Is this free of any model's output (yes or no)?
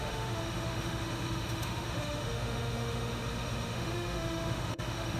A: no